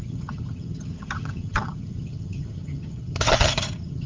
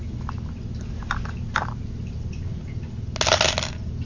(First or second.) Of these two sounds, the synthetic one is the first